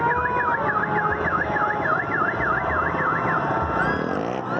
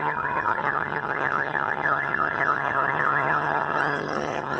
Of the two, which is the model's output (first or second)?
second